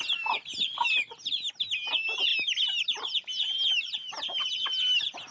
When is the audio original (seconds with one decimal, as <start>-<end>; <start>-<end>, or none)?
0.0-5.3